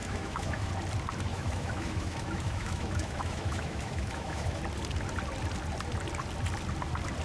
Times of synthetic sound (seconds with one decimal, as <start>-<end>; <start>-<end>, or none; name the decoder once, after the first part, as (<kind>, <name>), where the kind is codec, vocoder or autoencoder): 0.0-0.7 (autoencoder, DAC-VAE); 1.3-4.6